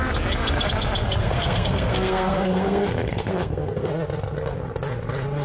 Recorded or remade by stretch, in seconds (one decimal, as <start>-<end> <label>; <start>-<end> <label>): 0.0-1.2 recorded; 1.2-3.9 remade; 3.9-5.4 recorded